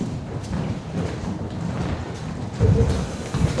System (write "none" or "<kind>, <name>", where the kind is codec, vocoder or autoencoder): vocoder, BigVGAN v2